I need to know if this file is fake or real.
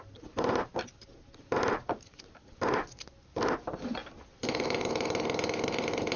real